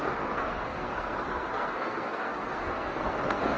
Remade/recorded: remade